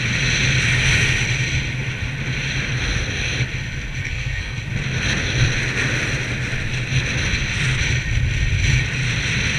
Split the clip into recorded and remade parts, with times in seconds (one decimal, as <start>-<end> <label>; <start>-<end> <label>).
0.0-4.0 recorded; 4.0-4.6 remade; 4.6-9.6 recorded